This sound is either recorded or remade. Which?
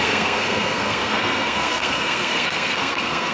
remade